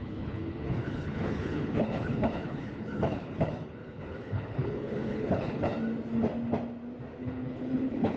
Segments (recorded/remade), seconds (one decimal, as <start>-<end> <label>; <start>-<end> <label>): 0.0-5.7 remade; 5.7-7.2 recorded; 7.2-8.2 remade